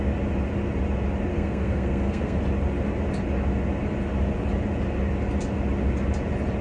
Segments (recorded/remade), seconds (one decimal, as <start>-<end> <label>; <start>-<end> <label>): 0.0-1.3 recorded; 1.3-2.4 remade; 2.4-6.6 recorded